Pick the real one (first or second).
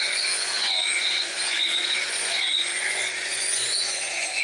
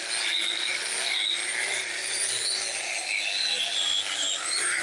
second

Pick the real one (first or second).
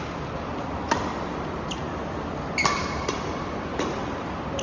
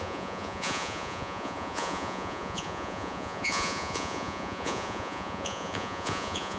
first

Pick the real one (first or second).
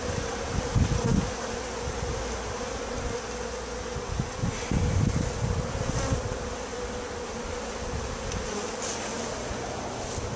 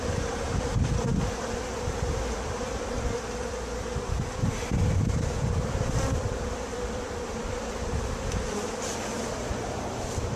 first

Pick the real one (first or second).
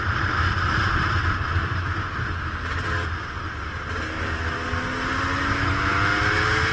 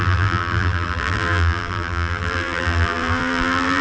first